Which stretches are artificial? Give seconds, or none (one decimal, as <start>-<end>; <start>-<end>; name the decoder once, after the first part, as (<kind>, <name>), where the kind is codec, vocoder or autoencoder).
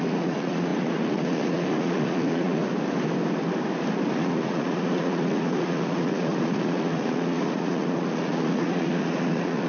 0.0-2.6 (vocoder, Vocos); 4.1-9.7